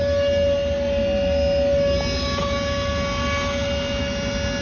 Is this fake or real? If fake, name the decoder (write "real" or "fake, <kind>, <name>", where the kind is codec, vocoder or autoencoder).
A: real